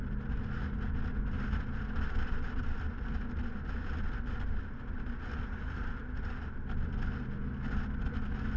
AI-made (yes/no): no